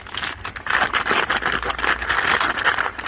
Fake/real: real